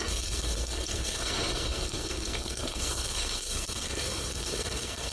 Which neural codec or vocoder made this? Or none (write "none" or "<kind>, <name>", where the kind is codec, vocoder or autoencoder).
codec, SNAC